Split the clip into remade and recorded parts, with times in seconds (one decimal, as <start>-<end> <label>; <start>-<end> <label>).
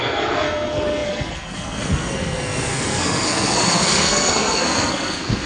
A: 0.0-5.5 remade